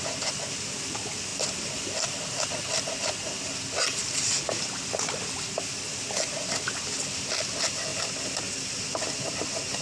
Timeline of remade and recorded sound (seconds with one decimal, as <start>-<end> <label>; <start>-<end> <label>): 0.0-9.8 recorded

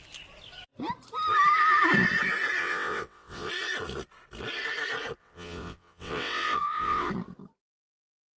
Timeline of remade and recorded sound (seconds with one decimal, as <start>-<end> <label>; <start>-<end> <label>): 0.0-2.6 recorded; 2.6-3.5 remade; 3.5-5.2 recorded; 5.2-7.1 remade; 7.1-8.4 recorded